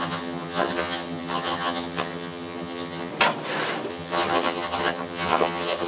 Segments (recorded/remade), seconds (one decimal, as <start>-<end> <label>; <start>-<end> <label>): 0.0-3.1 remade; 3.1-3.9 recorded; 3.9-5.9 remade